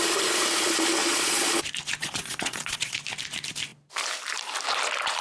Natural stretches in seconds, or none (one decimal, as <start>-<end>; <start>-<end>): 0.0-1.0; 1.6-2.0; 3.0-5.2